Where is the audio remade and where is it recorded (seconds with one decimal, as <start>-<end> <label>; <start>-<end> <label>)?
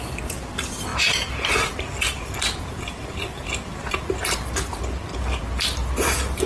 0.0-6.5 recorded